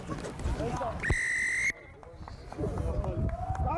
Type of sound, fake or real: real